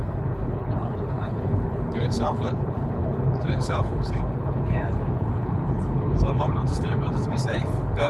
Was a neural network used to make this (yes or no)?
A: yes